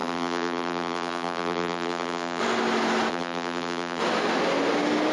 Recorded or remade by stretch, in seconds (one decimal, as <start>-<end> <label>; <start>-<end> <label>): 0.0-2.4 remade; 2.4-3.1 recorded; 3.1-4.0 remade; 4.0-5.1 recorded